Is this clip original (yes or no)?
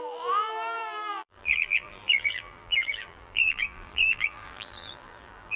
no